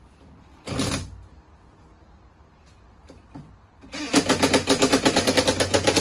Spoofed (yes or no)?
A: no